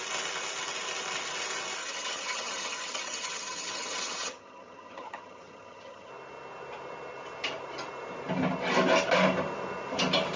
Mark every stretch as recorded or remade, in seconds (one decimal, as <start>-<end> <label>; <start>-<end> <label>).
0.0-1.8 recorded; 1.8-6.1 remade; 6.1-10.4 recorded